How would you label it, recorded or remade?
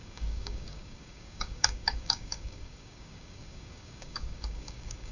remade